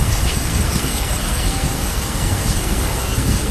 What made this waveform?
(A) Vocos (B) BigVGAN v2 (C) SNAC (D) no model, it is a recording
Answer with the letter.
C